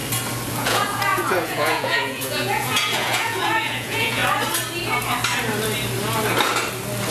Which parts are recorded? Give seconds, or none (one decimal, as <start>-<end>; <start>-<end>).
0.0-0.5; 4.2-7.1

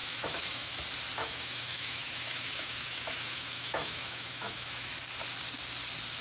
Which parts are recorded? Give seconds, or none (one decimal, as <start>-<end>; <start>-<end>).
0.7-1.2; 4.9-6.2

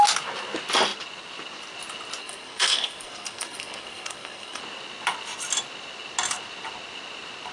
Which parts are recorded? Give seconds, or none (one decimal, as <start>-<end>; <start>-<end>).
0.0-2.2; 4.6-7.5

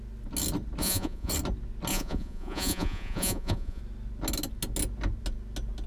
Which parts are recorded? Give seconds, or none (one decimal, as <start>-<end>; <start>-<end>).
0.0-0.8; 1.3-1.9; 3.8-5.9

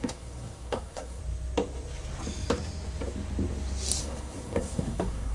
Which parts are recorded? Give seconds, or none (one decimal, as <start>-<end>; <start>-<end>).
1.2-4.0

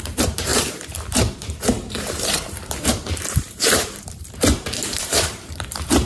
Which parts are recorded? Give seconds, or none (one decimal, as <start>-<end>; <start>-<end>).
none

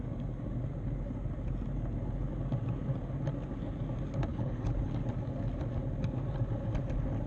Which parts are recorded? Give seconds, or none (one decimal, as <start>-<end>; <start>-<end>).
0.0-4.3; 4.9-7.3

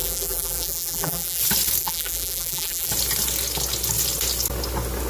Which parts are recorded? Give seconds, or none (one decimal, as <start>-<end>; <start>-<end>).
1.4-1.8; 2.9-5.1